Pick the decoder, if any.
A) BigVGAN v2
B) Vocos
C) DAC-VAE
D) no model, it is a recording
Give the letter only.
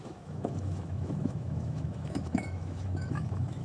C